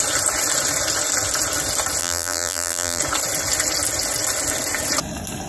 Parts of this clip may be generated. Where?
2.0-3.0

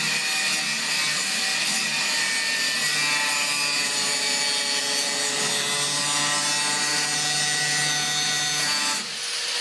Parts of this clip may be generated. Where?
none

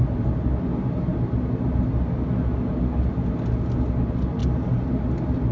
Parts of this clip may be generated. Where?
4.4-5.0

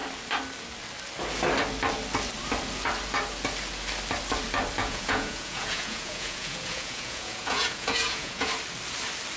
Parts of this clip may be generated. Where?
4.8-8.5